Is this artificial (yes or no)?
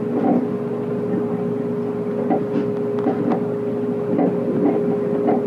no